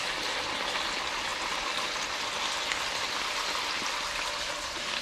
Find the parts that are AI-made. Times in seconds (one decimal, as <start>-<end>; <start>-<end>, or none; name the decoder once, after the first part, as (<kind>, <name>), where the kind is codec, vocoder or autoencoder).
none